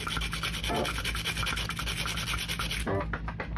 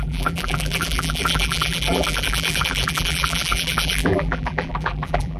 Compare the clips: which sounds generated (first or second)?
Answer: second